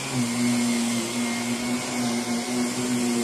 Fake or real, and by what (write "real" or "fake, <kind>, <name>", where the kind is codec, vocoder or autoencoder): real